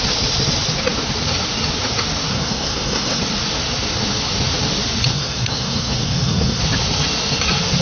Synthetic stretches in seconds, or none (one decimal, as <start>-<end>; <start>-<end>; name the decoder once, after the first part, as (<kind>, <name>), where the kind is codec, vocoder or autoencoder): 2.3-3.2 (codec, SNAC); 5.1-6.6